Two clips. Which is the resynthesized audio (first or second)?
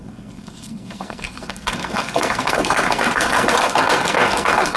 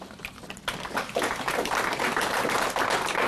first